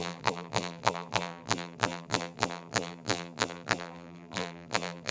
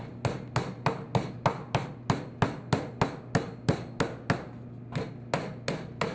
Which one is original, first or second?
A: second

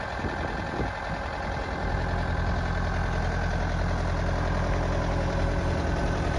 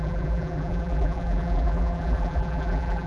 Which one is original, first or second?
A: first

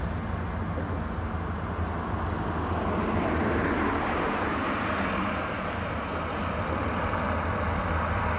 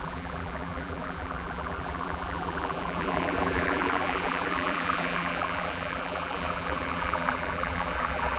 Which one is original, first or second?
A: first